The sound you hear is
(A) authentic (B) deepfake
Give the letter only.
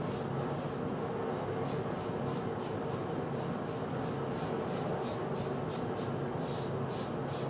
A